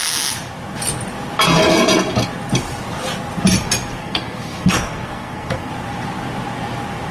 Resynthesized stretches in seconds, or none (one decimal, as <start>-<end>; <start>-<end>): 4.0-5.7